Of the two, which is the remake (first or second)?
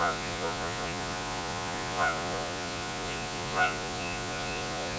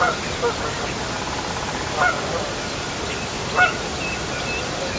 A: first